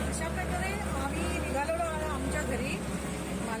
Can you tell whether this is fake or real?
real